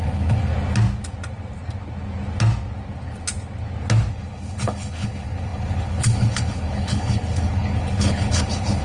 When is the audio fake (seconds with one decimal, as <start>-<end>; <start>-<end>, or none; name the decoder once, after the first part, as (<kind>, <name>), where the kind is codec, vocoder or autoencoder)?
0.0-0.5 (codec, HILCodec); 4.1-8.8